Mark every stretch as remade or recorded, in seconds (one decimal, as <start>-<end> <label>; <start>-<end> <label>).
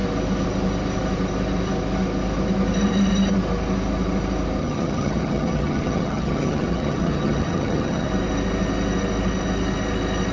0.0-4.6 recorded; 4.6-8.1 remade; 8.1-10.3 recorded